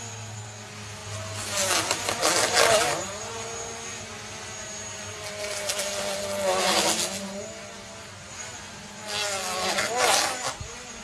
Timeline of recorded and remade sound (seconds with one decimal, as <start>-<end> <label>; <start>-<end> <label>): 0.0-11.0 recorded